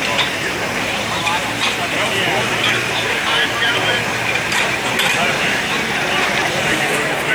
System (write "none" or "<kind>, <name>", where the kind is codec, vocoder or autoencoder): vocoder, BigVGAN v2